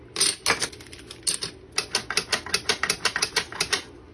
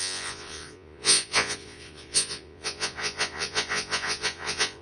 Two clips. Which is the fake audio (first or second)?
second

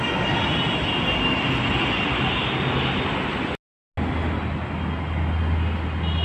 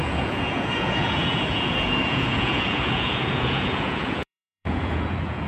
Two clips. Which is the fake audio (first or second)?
second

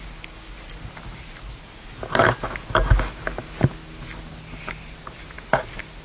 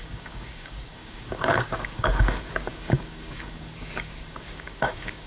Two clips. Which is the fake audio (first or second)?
second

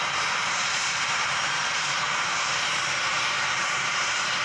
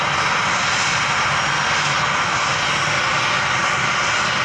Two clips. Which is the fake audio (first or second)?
first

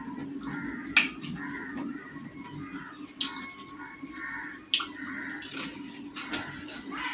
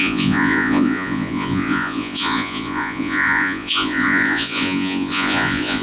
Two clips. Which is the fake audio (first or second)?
second